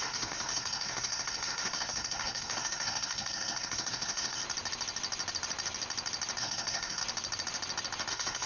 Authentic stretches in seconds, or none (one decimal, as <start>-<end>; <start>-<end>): 4.4-6.4; 7.0-8.1